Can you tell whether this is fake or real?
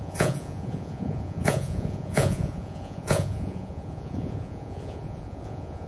fake